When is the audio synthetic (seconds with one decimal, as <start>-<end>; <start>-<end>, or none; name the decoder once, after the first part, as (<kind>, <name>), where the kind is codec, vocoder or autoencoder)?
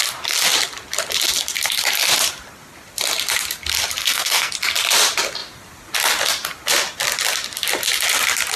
4.0-4.5 (codec, SNAC)